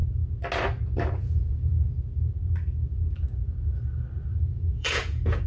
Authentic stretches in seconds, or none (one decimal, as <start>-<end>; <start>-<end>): 0.0-1.1; 1.7-4.3